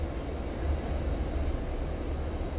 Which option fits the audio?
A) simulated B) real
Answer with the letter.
B